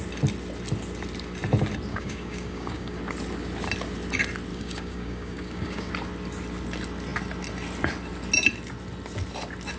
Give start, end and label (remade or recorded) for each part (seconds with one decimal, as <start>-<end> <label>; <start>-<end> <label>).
0.0-1.9 recorded; 1.9-3.0 remade; 3.0-4.5 recorded; 4.5-5.9 remade; 5.9-9.8 recorded